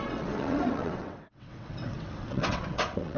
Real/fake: fake